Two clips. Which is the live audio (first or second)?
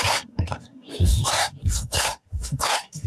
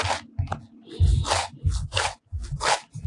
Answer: second